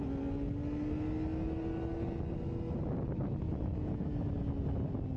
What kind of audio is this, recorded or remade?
recorded